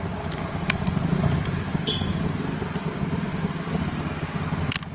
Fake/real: real